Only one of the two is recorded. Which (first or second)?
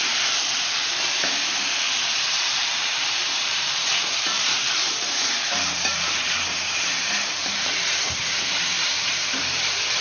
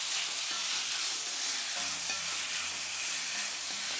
second